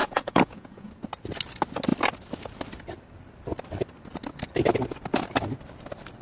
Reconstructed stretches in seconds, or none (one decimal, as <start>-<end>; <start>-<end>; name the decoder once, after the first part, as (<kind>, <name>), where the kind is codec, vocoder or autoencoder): 0.0-0.9 (vocoder, Vocos)